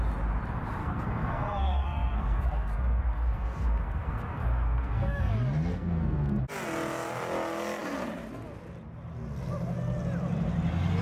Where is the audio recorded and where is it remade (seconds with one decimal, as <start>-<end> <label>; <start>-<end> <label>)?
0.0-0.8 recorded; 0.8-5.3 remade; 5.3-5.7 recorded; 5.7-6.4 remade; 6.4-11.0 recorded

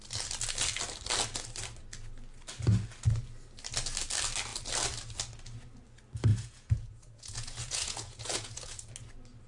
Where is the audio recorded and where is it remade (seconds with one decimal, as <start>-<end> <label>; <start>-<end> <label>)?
0.0-6.3 recorded; 6.3-8.9 remade; 8.9-9.5 recorded

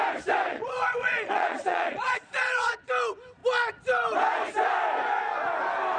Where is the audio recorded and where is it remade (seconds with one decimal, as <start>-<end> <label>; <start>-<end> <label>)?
0.0-0.5 recorded; 0.5-2.9 remade; 2.9-6.0 recorded